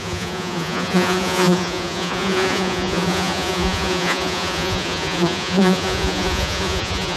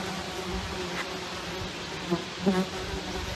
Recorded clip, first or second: second